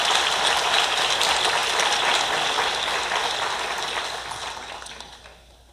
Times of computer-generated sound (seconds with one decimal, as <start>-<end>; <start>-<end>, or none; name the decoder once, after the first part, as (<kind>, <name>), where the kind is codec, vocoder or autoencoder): none